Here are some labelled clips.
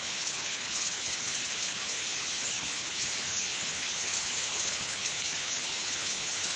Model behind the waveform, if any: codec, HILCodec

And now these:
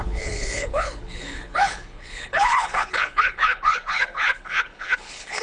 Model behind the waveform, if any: codec, HILCodec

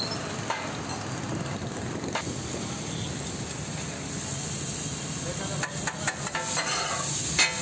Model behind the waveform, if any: none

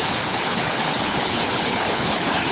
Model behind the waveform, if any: codec, HILCodec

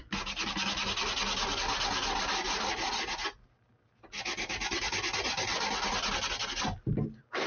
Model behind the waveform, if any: none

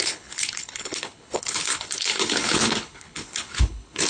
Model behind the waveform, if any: codec, HILCodec